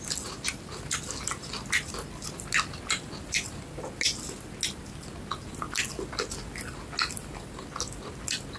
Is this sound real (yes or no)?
yes